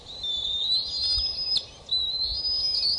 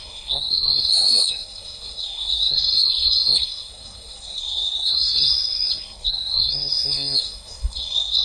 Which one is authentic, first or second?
first